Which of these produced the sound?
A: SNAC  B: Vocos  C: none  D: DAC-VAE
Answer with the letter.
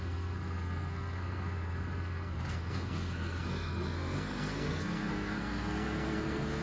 A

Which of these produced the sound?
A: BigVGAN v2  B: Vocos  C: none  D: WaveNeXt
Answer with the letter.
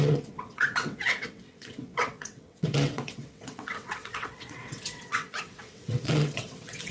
D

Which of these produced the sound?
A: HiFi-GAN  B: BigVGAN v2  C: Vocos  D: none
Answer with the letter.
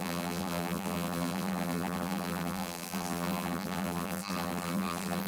B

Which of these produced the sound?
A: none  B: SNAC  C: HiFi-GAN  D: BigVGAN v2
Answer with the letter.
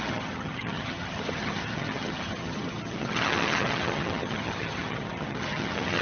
C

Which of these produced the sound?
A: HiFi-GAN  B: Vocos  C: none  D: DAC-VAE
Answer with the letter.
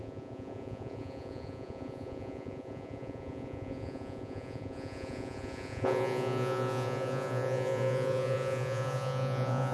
B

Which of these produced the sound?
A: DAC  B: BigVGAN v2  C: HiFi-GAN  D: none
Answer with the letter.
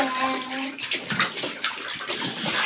D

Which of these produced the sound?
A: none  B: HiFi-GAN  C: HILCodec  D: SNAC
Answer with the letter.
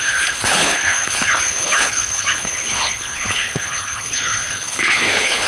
C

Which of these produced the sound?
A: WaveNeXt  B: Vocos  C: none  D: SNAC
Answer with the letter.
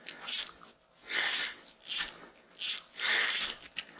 C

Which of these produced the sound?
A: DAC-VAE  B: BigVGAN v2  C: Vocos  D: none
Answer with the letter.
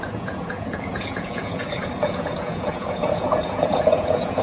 C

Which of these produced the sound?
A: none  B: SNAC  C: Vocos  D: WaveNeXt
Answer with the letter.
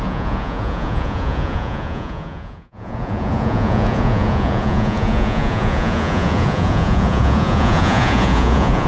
C